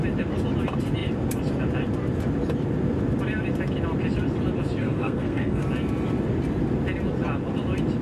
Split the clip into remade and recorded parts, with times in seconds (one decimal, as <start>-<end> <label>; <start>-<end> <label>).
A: 0.0-4.8 recorded; 4.8-5.6 remade; 5.6-8.0 recorded